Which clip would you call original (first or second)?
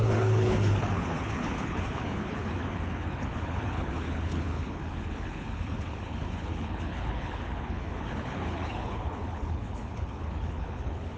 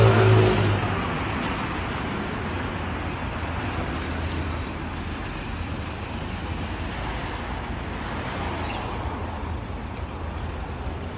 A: second